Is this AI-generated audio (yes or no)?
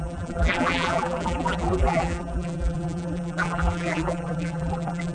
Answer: yes